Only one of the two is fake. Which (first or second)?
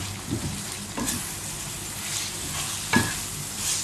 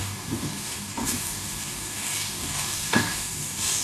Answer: second